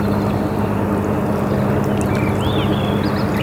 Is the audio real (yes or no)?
yes